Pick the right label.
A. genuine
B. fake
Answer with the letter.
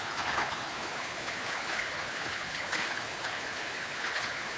B